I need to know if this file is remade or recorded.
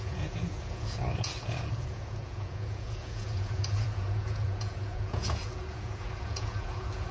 remade